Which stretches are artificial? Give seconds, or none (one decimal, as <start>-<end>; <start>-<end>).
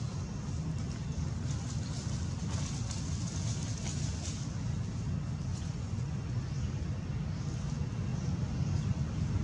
5.5-6.6